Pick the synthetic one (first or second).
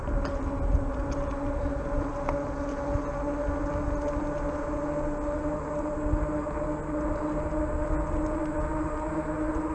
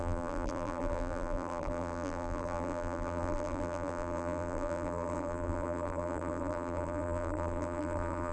second